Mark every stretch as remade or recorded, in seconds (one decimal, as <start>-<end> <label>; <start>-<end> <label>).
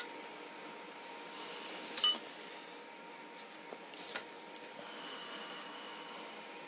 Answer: 0.0-6.7 recorded